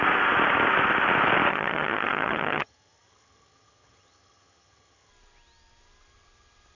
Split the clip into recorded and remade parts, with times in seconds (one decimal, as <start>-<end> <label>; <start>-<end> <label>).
0.0-1.5 recorded; 1.5-5.1 remade; 5.1-6.7 recorded